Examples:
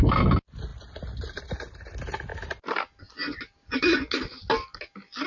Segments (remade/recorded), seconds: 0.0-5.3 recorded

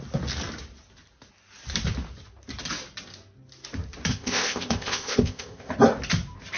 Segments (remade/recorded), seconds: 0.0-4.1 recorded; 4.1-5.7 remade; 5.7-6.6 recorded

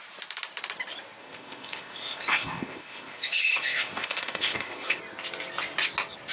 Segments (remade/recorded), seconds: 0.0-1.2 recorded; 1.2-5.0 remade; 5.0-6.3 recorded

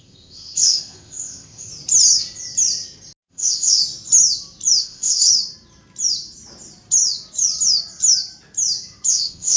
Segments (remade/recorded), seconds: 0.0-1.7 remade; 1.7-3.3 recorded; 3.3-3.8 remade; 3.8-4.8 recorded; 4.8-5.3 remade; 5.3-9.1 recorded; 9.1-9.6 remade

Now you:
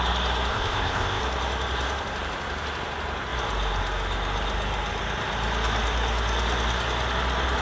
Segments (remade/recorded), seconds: 0.0-0.5 recorded; 0.5-1.2 remade; 1.2-7.6 recorded

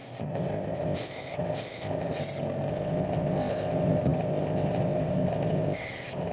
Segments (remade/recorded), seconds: 0.0-2.2 remade; 2.2-2.7 recorded; 2.7-6.3 remade

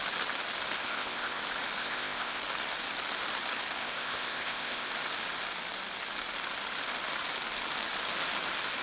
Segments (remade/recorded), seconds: 0.0-0.8 recorded; 0.8-1.4 remade; 1.4-1.8 recorded; 1.8-2.4 remade; 2.4-3.8 recorded; 3.8-4.9 remade; 4.9-8.8 recorded

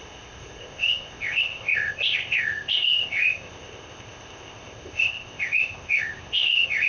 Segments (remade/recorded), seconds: 0.0-6.9 remade